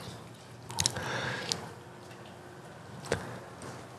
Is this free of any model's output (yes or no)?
yes